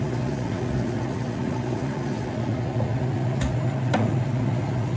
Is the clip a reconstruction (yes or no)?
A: yes